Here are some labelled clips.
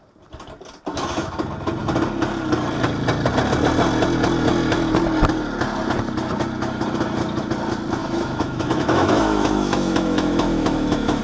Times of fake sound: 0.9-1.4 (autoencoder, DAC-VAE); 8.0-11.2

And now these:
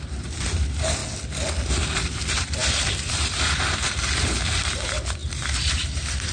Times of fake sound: 0.0-1.0 (vocoder, BigVGAN v2); 1.7-6.3

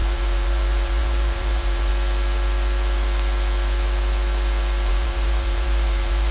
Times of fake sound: 0.0-1.9 (vocoder, BigVGAN v2); 4.9-6.3

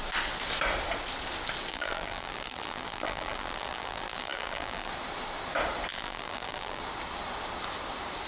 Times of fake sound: 1.7-4.9 (vocoder, BigVGAN v2); 5.9-6.8

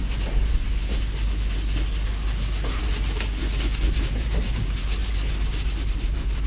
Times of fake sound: 0.0-0.8 (vocoder, BigVGAN v2); 2.8-3.4; 4.0-5.0; 5.8-6.5

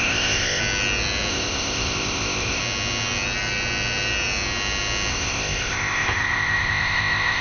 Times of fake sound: 0.0-0.6 (codec, ZipCodec); 1.3-2.6; 5.1-7.4

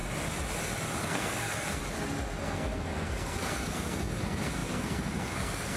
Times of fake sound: 1.0-1.8 (codec, SNAC); 2.4-5.8

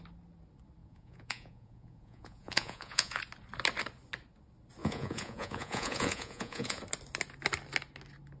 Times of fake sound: 0.8-3.2 (vocoder, Vocos); 4.8-6.8